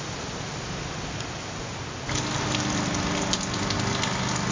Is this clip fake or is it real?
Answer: real